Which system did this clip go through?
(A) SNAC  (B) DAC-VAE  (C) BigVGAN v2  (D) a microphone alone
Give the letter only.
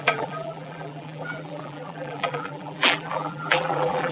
C